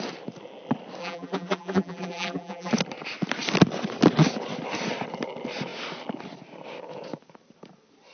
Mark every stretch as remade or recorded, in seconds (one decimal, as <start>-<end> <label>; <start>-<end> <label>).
0.0-1.0 recorded; 1.0-2.7 remade; 2.7-8.1 recorded